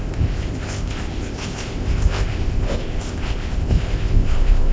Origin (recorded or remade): remade